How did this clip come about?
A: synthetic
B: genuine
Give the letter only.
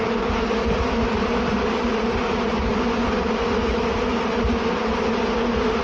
B